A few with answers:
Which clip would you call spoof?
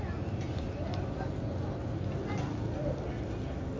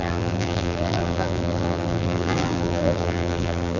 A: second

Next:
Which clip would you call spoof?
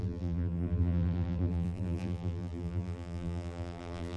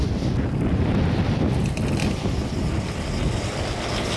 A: first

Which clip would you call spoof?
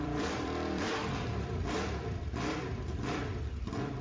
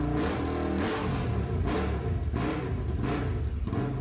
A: first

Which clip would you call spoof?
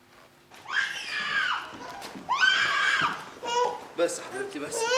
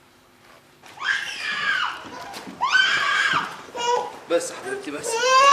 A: second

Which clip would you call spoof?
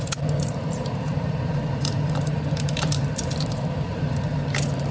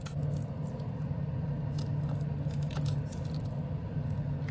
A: first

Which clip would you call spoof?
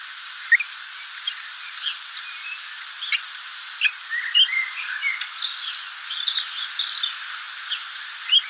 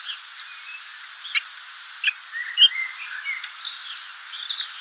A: first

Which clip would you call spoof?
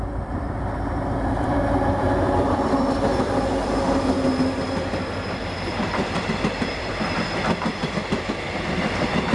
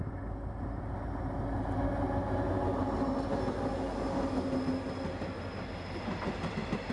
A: first